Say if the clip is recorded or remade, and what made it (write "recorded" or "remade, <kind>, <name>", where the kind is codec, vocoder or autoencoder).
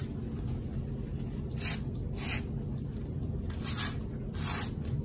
recorded